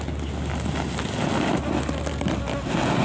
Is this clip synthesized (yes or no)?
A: no